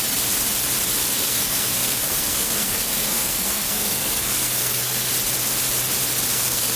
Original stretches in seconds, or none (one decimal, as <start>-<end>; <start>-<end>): 0.0-1.0; 5.1-6.3